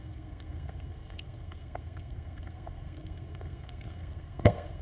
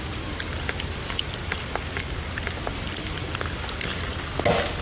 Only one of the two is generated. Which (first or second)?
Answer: first